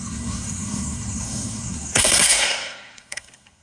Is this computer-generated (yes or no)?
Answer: yes